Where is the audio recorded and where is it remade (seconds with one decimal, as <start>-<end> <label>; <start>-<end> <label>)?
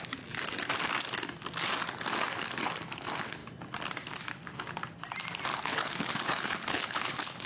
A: 0.0-5.5 recorded; 5.5-7.5 remade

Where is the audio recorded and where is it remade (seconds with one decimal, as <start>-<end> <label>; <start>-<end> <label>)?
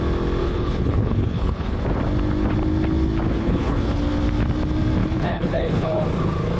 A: 0.0-0.4 recorded; 0.4-1.8 remade; 1.8-3.4 recorded; 3.4-4.0 remade; 4.0-5.0 recorded; 5.0-6.0 remade; 6.0-6.6 recorded